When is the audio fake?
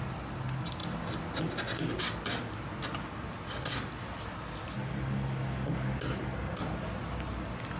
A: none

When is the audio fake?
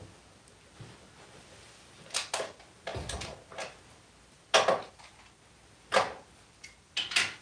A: none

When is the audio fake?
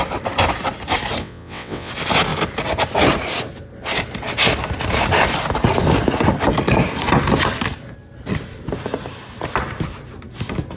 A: 1.2-1.9 (vocoder, WaveNeXt)